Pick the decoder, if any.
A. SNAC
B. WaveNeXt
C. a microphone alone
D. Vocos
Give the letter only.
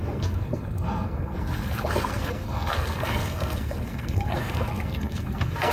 A